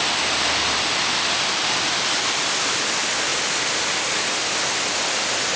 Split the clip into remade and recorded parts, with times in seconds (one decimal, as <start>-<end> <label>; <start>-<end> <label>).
0.0-5.6 recorded